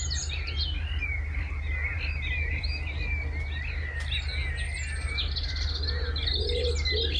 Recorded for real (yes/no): yes